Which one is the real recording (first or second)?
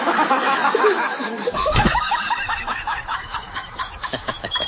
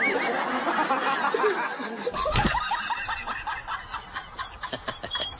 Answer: second